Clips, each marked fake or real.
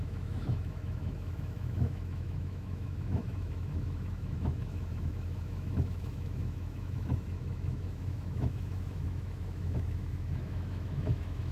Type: fake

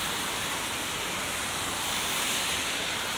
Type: real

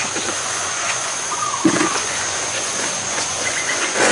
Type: fake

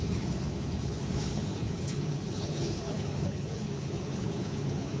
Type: fake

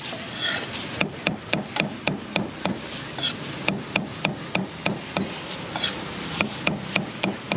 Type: real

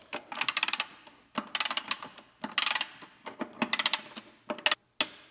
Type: real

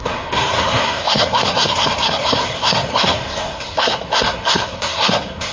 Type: fake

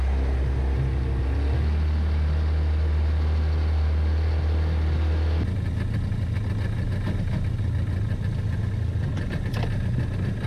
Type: real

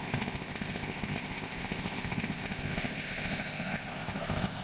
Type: fake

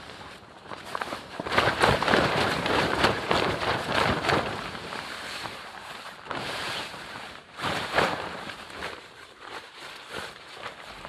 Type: fake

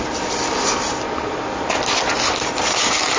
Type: real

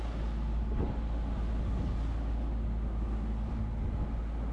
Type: real